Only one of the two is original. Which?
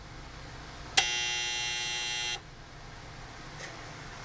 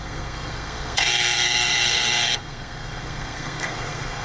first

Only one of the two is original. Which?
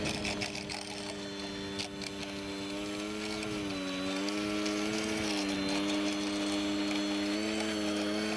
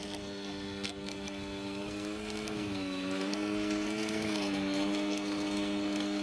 first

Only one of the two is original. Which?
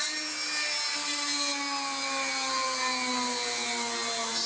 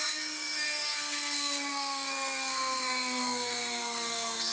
first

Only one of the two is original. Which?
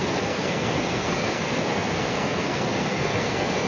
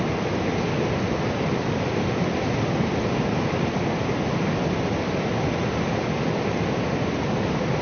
second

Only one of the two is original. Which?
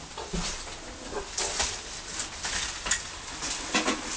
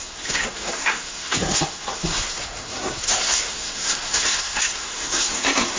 first